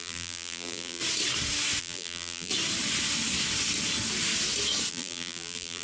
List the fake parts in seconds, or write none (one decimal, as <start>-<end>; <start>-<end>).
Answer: 0.0-1.0; 1.8-2.5; 4.9-5.8